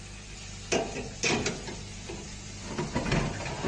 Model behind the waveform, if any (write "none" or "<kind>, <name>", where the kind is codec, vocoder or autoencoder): none